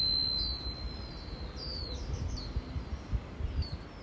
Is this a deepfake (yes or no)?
no